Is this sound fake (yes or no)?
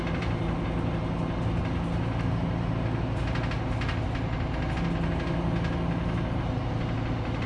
no